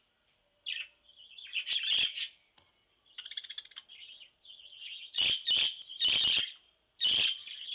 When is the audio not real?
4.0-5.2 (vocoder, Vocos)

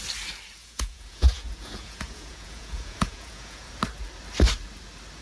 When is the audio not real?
0.6-3.7 (vocoder, Vocos)

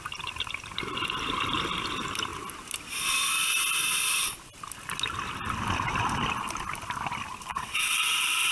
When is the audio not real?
7.5-8.5 (vocoder, WaveNeXt)

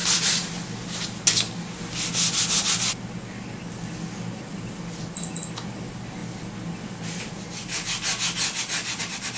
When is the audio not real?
none

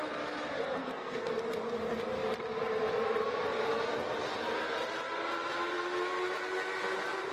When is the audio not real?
0.8-1.4 (codec, SNAC)

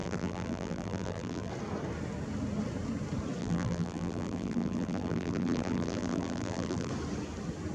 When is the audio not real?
0.0-1.5 (vocoder, BigVGAN v2); 3.4-6.9